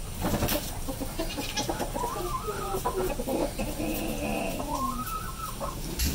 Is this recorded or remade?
recorded